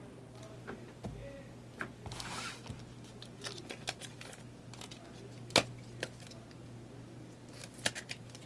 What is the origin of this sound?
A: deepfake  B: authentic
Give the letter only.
B